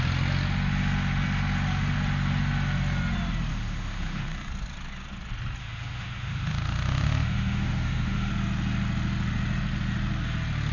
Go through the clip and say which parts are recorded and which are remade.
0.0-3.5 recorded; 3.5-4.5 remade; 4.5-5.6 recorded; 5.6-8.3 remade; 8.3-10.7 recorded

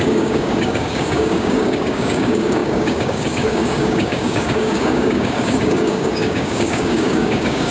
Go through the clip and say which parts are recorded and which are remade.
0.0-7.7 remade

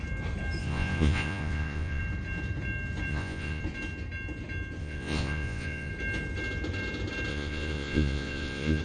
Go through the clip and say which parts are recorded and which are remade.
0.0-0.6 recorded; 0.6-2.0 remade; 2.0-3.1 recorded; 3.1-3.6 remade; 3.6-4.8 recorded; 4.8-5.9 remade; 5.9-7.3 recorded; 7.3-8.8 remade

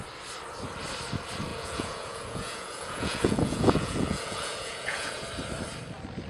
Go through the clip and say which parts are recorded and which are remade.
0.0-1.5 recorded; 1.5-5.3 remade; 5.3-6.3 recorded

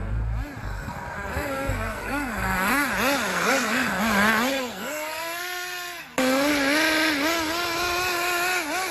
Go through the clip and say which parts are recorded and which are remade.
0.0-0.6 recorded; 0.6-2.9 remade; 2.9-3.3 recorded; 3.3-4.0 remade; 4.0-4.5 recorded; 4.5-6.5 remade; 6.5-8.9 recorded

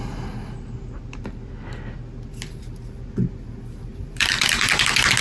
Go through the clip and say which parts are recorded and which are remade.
0.0-3.9 recorded; 3.9-4.7 remade; 4.7-5.2 recorded